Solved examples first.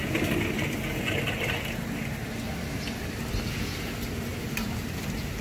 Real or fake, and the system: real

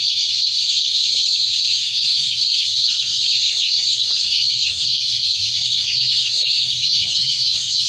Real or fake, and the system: fake, codec, SNAC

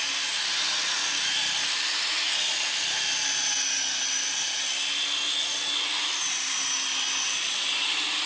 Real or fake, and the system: real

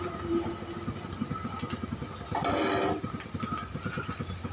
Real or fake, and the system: real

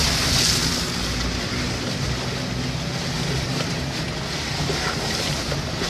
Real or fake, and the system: real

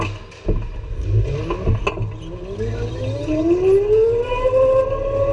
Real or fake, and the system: real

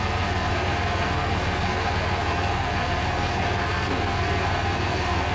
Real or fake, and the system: fake, codec, SNAC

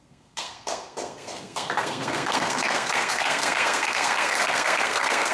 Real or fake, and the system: fake, codec, SNAC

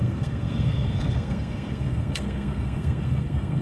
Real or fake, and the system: fake, codec, SNAC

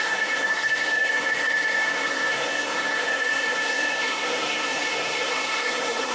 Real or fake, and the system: fake, codec, SNAC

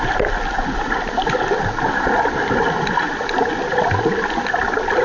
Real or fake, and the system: real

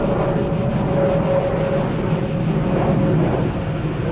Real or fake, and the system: real